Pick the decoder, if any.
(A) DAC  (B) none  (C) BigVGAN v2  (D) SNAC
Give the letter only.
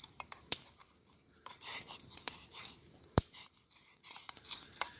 C